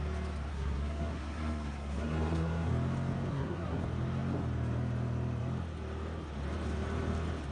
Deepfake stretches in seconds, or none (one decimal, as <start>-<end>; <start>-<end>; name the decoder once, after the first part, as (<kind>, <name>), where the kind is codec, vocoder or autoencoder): 0.5-2.7 (codec, SNAC); 3.3-3.8